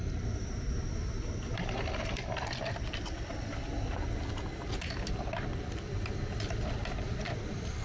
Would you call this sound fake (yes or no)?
no